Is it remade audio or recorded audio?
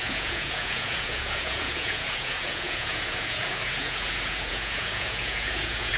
remade